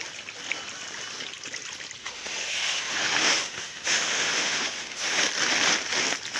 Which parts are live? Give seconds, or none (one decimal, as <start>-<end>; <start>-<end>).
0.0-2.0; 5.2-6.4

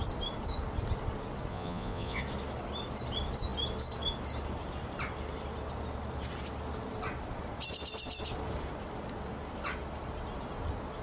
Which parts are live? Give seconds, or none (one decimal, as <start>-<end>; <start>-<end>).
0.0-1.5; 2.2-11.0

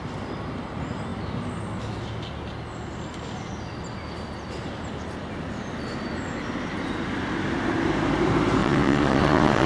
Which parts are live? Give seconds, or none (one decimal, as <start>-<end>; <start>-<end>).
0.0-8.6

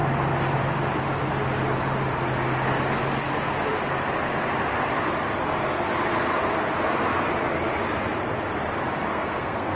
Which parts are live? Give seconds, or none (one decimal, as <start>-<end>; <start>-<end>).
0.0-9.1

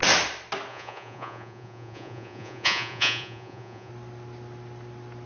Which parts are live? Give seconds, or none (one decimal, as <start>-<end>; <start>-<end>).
0.0-0.7; 3.9-5.3

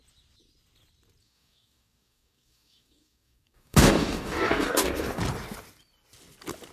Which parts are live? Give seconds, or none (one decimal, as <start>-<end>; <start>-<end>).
0.0-1.2; 5.2-6.7